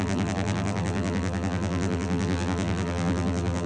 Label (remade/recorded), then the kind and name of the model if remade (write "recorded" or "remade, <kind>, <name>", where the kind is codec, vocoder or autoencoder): remade, vocoder, BigVGAN v2